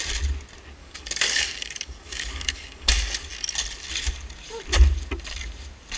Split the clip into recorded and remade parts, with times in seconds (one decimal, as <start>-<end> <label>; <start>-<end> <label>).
0.0-0.8 recorded; 0.8-2.9 remade; 2.9-6.0 recorded